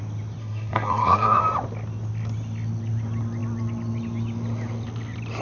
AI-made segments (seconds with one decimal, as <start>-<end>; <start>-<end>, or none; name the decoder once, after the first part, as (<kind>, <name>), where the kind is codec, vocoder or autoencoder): 0.4-1.4 (codec, SNAC)